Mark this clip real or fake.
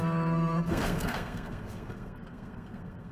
fake